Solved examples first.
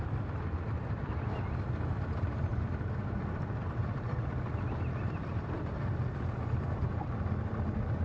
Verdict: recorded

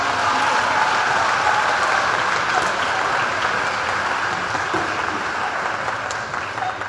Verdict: recorded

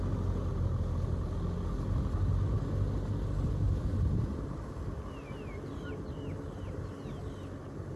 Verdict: recorded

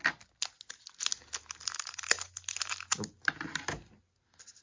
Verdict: recorded